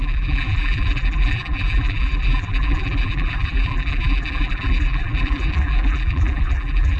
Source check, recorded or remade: remade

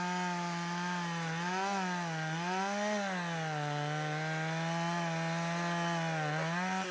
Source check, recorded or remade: recorded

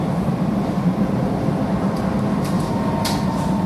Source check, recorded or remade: recorded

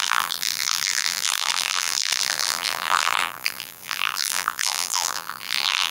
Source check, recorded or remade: remade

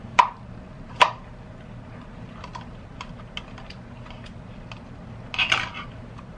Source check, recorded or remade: recorded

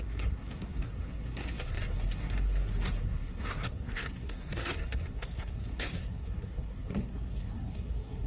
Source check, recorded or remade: remade